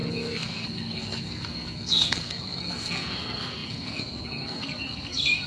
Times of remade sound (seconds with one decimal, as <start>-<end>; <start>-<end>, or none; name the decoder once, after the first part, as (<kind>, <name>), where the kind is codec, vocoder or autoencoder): 0.0-5.5 (codec, SNAC)